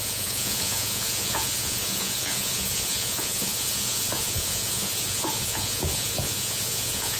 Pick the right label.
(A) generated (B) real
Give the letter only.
A